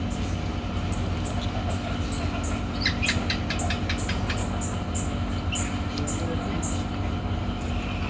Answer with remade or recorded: recorded